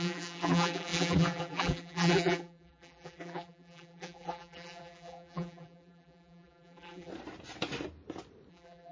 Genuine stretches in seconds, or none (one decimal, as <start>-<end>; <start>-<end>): 7.1-8.5